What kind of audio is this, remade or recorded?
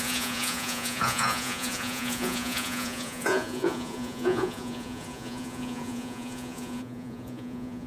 remade